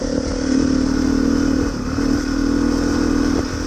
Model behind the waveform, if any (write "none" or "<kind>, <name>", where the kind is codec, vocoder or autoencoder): none